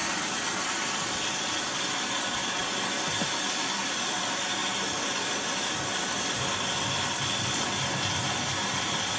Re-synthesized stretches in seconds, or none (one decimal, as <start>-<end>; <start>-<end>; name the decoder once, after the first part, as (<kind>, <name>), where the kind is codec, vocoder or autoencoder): 0.0-9.2 (vocoder, BigVGAN v2)